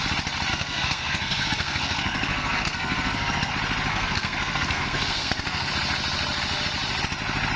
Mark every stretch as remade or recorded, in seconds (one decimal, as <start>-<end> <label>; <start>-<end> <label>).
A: 0.0-0.5 recorded; 0.5-3.5 remade; 3.5-3.9 recorded; 3.9-5.7 remade; 5.7-7.6 recorded